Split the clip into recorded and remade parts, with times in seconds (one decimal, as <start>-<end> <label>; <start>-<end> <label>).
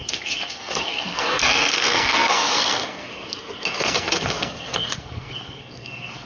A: 0.0-6.3 remade